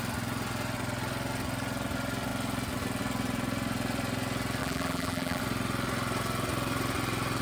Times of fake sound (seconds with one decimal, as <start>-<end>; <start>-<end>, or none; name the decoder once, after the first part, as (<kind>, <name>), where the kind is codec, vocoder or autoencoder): 4.6-5.4 (vocoder, BigVGAN v2)